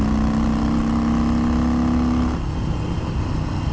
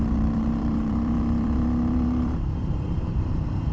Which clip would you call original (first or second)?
first